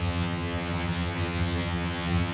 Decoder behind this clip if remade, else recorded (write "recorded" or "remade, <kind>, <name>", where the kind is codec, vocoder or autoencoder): remade, vocoder, HiFi-GAN